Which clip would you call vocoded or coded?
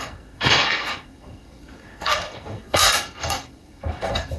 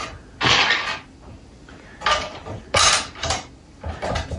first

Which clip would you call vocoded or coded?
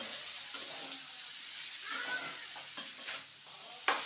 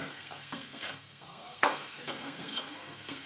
second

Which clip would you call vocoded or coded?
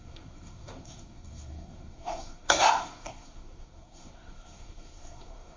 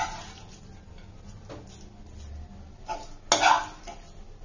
first